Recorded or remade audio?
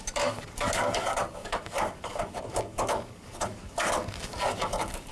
remade